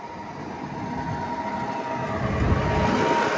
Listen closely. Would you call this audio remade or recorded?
recorded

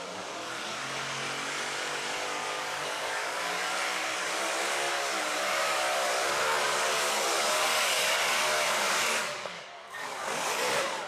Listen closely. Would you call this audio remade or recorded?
remade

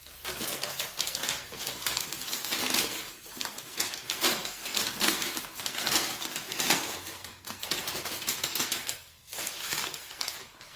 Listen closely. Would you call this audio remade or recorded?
remade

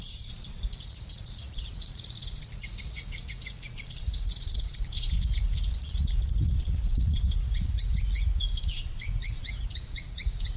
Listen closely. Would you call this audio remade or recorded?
remade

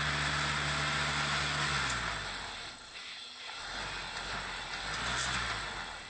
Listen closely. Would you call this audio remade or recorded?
recorded